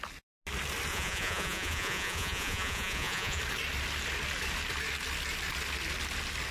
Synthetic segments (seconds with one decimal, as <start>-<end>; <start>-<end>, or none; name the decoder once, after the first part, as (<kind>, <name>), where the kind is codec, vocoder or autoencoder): 0.9-3.4 (vocoder, Vocos)